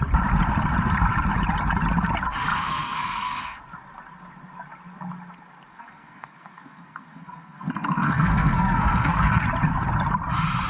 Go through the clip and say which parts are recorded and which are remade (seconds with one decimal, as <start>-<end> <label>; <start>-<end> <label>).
0.0-2.5 recorded; 2.5-3.6 remade; 3.6-5.7 recorded; 5.7-9.4 remade; 9.4-10.7 recorded